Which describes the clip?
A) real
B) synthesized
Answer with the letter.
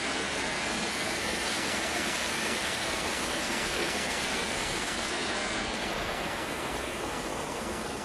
B